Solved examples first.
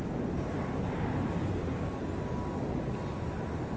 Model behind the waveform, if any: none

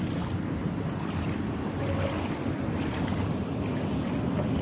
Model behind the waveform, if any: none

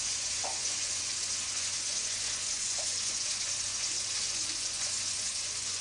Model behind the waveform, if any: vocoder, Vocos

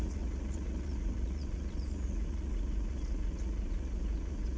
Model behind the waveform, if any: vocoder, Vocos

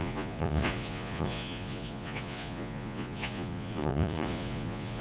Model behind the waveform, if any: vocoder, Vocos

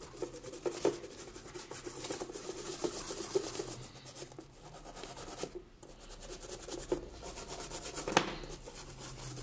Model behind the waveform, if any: none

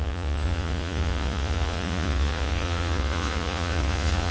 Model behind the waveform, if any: vocoder, Vocos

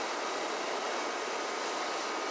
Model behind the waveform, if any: none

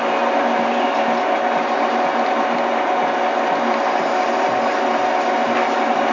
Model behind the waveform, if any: none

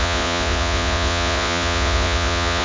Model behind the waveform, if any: vocoder, Vocos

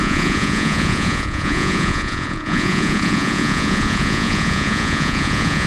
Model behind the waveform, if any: vocoder, Vocos